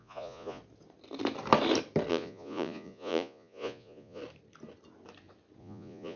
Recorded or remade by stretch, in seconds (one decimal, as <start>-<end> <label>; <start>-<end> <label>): 0.0-0.6 remade; 0.6-2.1 recorded; 2.1-4.2 remade; 4.2-5.6 recorded; 5.6-6.2 remade